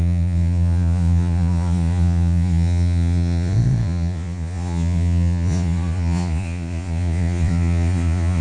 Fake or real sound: fake